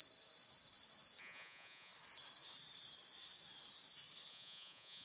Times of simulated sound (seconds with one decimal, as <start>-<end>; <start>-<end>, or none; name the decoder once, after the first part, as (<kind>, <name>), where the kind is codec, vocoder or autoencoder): 1.2-1.9 (vocoder, Vocos); 4.3-5.0